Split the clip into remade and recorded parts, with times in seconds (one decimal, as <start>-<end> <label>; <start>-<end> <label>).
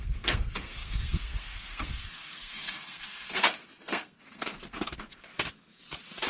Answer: 0.0-5.3 remade; 5.3-6.3 recorded